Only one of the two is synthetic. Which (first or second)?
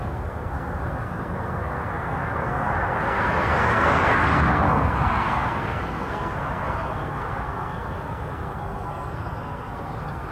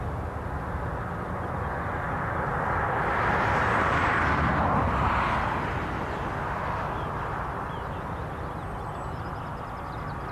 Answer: first